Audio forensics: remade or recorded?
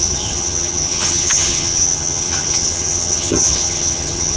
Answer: remade